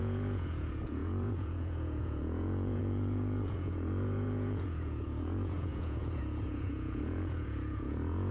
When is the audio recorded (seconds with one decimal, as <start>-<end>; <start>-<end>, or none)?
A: none